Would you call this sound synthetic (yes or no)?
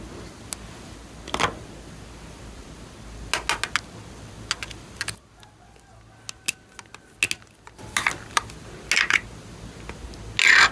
no